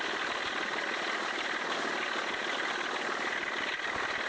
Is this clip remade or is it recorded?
recorded